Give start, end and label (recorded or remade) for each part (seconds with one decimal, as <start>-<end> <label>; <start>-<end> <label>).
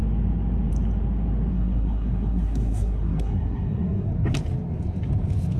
0.0-1.5 recorded; 1.5-4.1 remade; 4.1-5.6 recorded